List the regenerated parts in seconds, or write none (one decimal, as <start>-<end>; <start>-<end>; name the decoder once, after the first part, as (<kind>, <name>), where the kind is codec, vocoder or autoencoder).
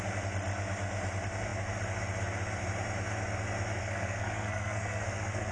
3.8-5.5 (codec, SNAC)